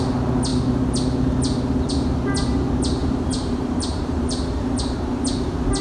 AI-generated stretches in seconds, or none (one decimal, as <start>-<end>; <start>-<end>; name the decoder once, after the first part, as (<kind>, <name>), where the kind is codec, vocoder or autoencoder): 3.0-4.8 (vocoder, BigVGAN v2)